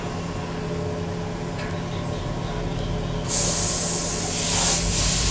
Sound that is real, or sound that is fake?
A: real